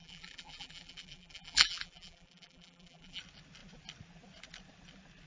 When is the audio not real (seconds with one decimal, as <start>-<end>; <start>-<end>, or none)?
0.0-3.2